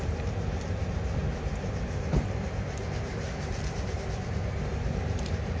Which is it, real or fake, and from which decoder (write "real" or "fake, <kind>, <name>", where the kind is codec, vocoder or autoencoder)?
fake, vocoder, BigVGAN v2